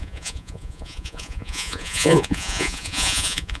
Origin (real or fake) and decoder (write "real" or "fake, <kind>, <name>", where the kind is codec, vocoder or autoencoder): fake, vocoder, Vocos